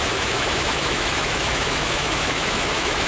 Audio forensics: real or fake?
fake